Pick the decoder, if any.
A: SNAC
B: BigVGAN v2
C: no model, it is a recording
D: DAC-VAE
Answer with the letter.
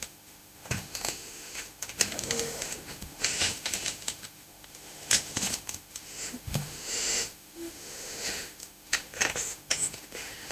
D